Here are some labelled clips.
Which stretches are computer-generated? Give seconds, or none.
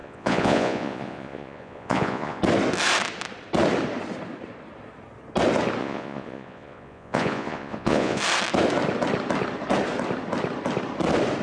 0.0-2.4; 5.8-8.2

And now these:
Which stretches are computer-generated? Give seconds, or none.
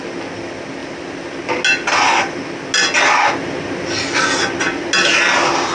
none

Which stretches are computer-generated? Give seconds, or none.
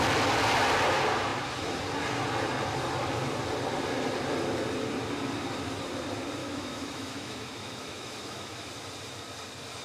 6.4-8.7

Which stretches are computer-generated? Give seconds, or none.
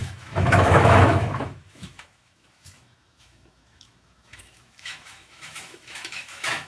0.0-6.7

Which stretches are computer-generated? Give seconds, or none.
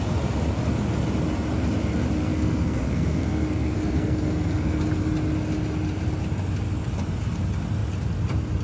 2.2-4.8